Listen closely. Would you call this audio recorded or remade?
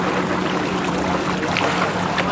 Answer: recorded